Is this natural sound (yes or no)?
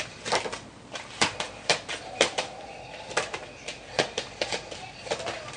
no